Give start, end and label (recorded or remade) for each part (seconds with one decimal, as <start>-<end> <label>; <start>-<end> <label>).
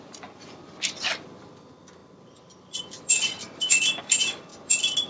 0.0-4.5 remade; 4.5-5.1 recorded